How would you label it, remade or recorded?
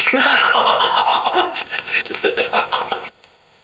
remade